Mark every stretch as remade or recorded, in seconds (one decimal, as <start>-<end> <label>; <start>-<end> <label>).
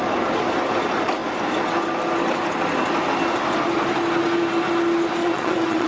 0.0-5.2 recorded; 5.2-5.9 remade